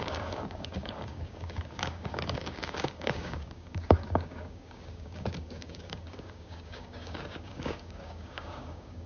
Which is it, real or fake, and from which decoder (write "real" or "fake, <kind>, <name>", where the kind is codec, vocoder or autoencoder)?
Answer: fake, codec, DAC